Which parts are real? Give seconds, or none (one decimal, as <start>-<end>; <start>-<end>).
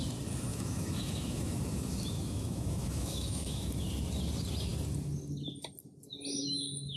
0.0-0.5; 3.9-6.4